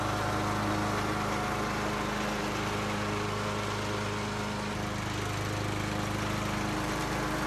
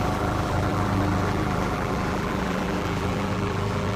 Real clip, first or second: first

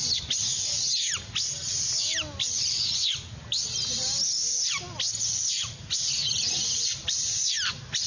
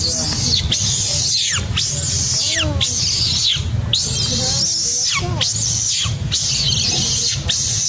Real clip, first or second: second